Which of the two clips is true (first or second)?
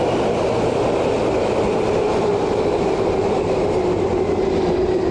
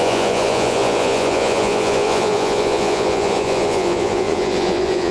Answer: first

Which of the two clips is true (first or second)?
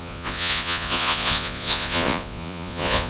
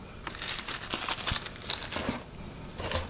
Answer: second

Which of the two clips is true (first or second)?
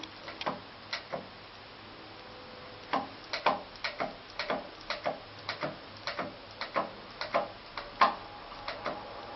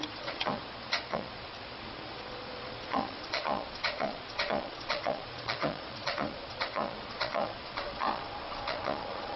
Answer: first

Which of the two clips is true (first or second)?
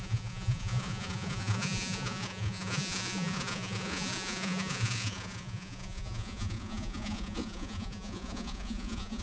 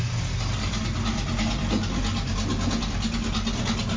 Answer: second